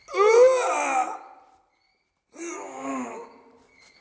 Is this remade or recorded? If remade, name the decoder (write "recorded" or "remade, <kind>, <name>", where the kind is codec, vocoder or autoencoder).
recorded